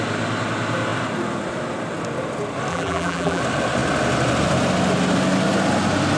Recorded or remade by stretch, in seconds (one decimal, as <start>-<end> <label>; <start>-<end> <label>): 0.0-2.7 recorded; 2.7-3.4 remade; 3.4-6.2 recorded